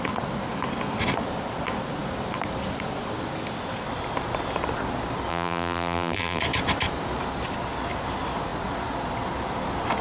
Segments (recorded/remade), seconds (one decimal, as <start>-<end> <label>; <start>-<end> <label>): 0.0-5.3 recorded; 5.3-6.4 remade; 6.4-10.0 recorded